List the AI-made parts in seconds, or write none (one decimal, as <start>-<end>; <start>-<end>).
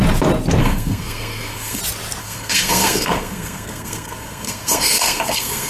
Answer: 0.6-1.8; 2.2-5.7